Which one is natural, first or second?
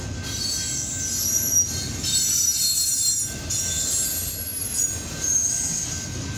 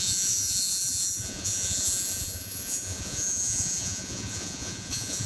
first